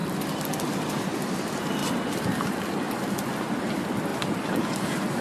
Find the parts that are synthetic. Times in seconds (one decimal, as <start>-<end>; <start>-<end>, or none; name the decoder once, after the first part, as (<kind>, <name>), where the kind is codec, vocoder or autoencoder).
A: none